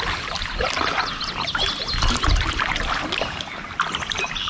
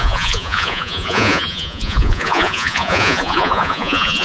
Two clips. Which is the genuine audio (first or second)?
first